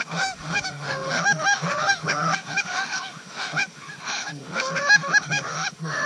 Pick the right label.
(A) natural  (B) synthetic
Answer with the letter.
B